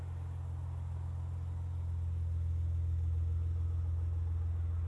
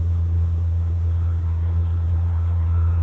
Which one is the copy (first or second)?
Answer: second